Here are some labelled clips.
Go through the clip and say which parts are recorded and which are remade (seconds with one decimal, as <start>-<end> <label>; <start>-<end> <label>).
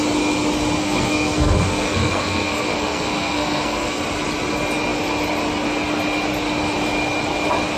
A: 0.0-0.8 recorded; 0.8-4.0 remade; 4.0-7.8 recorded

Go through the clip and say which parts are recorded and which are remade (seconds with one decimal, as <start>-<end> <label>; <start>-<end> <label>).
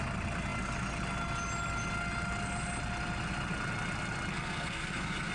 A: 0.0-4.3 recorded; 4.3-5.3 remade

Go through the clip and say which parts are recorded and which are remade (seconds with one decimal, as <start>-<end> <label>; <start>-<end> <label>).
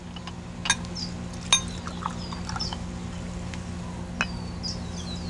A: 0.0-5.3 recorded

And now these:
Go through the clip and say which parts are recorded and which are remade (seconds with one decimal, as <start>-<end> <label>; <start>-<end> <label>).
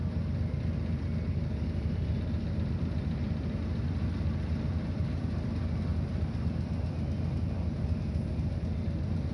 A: 0.0-9.3 recorded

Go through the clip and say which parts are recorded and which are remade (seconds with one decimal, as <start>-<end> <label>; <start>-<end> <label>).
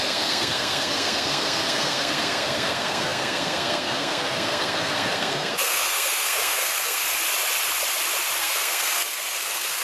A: 0.0-7.0 remade; 7.0-8.4 recorded; 8.4-9.8 remade